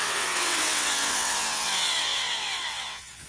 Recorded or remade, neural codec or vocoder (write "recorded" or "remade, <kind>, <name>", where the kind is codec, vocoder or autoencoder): remade, vocoder, WaveNeXt